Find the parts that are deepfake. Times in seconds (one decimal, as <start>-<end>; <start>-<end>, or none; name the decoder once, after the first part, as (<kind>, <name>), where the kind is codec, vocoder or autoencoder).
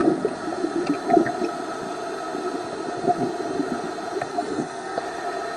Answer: 4.3-5.0 (codec, SNAC)